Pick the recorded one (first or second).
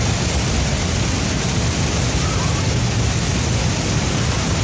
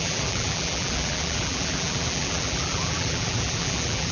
first